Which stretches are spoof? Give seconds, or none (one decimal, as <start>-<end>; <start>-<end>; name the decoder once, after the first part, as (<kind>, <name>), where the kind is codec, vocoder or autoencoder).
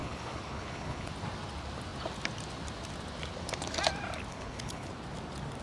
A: 0.0-1.1 (codec, HILCodec); 4.3-4.9